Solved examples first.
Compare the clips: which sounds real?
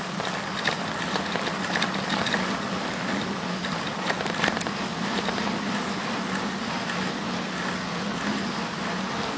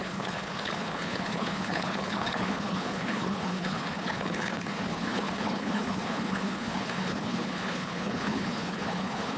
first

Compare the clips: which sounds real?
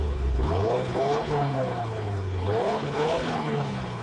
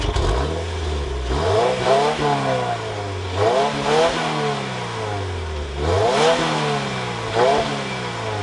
second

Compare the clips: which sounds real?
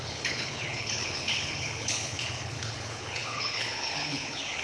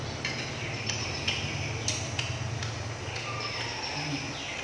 second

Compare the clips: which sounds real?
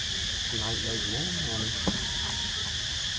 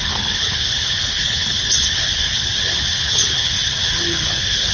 first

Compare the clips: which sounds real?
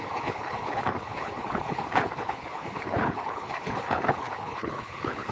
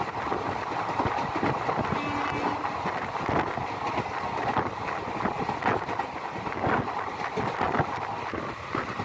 second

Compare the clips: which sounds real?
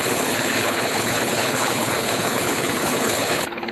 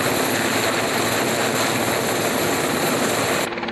second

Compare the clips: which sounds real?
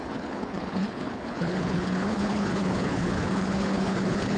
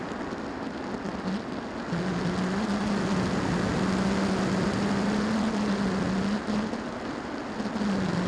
second